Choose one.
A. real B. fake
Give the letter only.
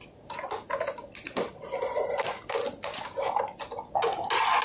A